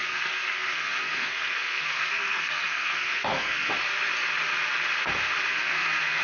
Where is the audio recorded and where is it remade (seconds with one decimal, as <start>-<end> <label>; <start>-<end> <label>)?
0.0-3.7 remade; 3.7-5.5 recorded; 5.5-6.2 remade